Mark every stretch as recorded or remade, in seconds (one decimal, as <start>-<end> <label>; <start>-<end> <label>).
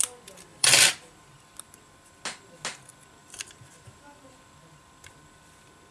0.0-0.5 recorded; 0.5-1.4 remade; 1.4-3.2 recorded; 3.2-4.4 remade; 4.4-5.9 recorded